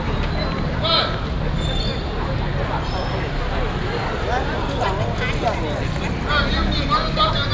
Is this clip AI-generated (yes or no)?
no